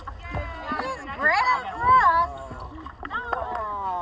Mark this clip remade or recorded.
recorded